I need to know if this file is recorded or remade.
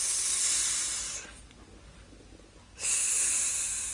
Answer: recorded